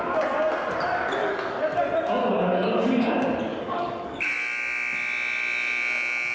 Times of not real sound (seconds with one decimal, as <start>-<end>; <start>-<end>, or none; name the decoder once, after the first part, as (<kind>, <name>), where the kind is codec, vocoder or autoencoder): 1.2-1.8 (codec, DAC); 2.2-3.1; 3.5-4.3